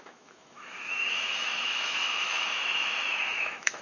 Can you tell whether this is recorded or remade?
remade